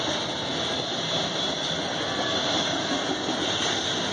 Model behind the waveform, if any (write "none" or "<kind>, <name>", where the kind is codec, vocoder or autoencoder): none